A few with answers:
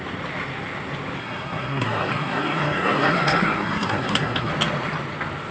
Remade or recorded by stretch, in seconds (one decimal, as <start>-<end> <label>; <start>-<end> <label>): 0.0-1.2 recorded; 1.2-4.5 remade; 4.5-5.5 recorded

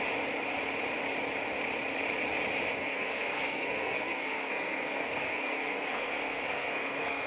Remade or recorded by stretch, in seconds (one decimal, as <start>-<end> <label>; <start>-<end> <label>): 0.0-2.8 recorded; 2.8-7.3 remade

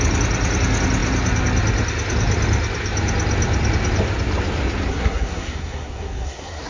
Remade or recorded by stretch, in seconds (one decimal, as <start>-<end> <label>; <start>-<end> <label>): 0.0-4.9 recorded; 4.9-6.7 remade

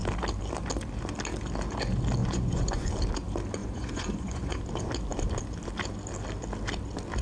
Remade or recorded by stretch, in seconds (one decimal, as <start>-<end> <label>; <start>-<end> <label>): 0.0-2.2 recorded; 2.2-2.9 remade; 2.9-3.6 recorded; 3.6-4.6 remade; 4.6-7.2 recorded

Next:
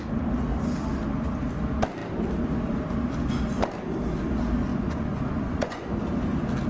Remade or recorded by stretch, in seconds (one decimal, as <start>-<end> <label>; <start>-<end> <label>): 0.0-4.7 recorded; 4.7-5.9 remade; 5.9-6.7 recorded

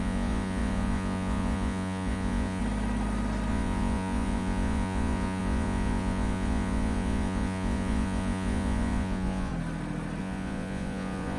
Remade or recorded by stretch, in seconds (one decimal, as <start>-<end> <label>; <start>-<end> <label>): 0.0-2.6 remade; 2.6-3.5 recorded; 3.5-9.5 remade; 9.5-10.2 recorded; 10.2-11.4 remade